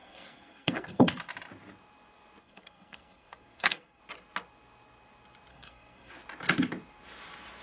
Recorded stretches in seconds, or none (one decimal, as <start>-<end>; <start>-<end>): 1.2-2.4; 4.0-5.5; 6.1-7.6